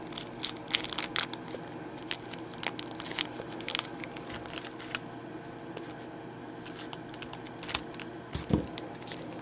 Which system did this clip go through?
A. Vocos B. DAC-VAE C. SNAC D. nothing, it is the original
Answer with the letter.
D